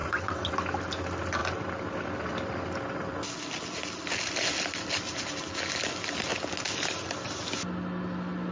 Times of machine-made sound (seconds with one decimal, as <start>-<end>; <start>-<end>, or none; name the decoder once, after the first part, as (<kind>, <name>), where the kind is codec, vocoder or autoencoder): 0.0-0.5 (vocoder, WaveNeXt)